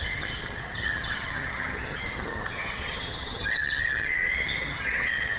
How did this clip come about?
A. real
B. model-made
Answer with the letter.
B